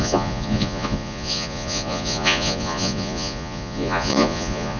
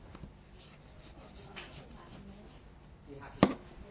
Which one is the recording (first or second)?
second